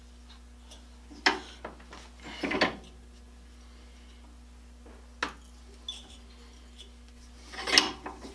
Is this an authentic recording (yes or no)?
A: yes